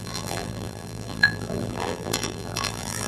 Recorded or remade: remade